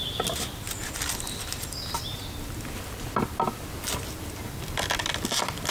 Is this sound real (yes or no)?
yes